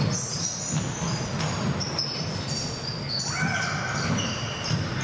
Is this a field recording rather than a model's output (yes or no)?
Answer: yes